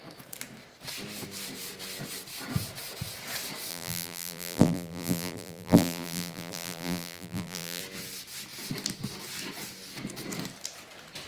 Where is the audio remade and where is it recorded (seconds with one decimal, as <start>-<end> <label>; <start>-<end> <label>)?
0.0-3.7 recorded; 3.7-7.8 remade; 7.8-11.3 recorded